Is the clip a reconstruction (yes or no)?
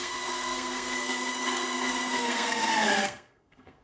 yes